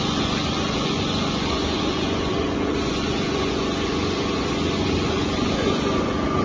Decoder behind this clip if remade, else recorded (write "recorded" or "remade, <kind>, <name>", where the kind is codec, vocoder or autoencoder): remade, vocoder, Vocos